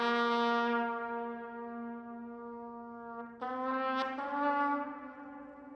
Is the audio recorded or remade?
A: recorded